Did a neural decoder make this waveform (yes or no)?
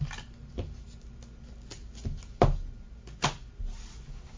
no